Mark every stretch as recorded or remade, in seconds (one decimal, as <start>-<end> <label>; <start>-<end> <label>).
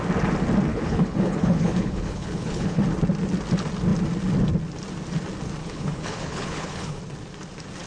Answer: 0.0-0.7 recorded; 0.7-2.8 remade; 2.8-5.6 recorded; 5.6-7.0 remade; 7.0-7.9 recorded